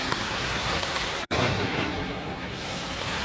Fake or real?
fake